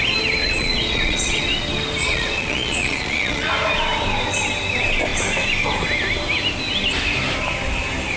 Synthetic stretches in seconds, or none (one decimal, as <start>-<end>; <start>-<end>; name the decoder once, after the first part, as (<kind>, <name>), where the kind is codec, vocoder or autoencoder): 0.4-1.4 (vocoder, Vocos); 2.0-3.5